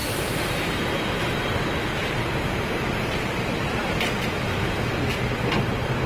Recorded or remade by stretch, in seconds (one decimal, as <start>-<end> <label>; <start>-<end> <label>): 0.0-0.8 remade; 0.8-2.0 recorded; 2.0-4.0 remade; 4.0-6.1 recorded

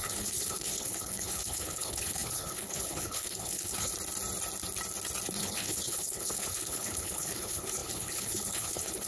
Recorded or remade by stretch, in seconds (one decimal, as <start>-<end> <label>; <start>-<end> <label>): 0.0-3.9 remade; 3.9-5.4 recorded; 5.4-9.1 remade

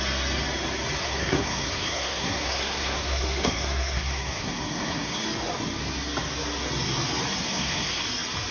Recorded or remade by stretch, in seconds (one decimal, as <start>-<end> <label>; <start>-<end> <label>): 0.0-1.0 recorded; 1.0-5.2 remade; 5.2-7.4 recorded; 7.4-8.0 remade; 8.0-8.5 recorded

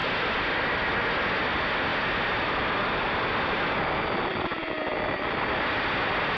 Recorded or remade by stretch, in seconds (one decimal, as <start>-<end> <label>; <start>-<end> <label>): 0.0-6.4 recorded